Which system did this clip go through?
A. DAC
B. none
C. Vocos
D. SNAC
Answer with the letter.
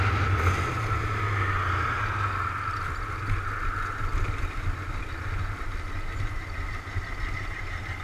B